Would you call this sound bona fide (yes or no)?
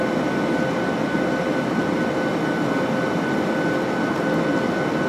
yes